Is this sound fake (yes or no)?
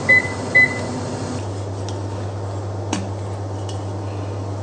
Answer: no